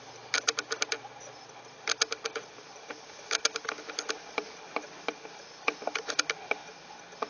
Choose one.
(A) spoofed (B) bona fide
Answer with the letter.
B